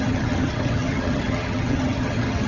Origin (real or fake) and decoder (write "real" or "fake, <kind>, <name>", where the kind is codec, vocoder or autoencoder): fake, vocoder, HiFi-GAN